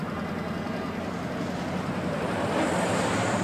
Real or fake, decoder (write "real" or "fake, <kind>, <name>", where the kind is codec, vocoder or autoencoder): real